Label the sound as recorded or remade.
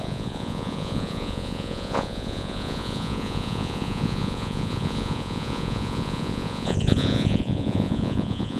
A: remade